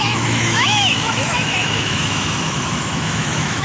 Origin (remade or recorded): remade